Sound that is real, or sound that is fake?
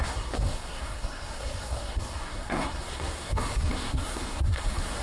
fake